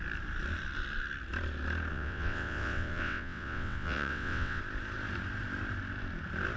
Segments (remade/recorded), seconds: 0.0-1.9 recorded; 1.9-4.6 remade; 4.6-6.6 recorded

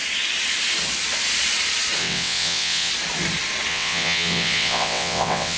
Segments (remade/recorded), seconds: 0.0-2.0 recorded; 2.0-2.9 remade; 2.9-3.7 recorded; 3.7-5.6 remade

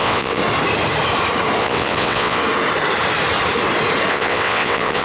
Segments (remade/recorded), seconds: 0.0-0.4 remade; 0.4-1.6 recorded; 1.6-2.4 remade; 2.4-4.1 recorded; 4.1-5.0 remade

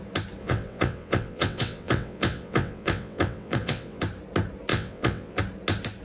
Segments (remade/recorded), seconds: 0.0-0.4 recorded; 0.4-4.0 remade; 4.0-4.7 recorded; 4.7-5.4 remade; 5.4-6.0 recorded

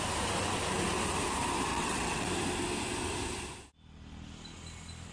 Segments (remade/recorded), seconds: 0.0-1.7 recorded; 1.7-2.3 remade; 2.3-5.1 recorded